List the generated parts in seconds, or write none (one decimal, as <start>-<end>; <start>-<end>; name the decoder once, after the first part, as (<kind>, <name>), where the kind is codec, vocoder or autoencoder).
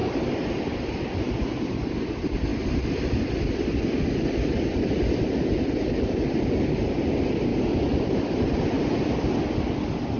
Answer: 0.0-2.0 (vocoder, BigVGAN v2); 7.5-8.8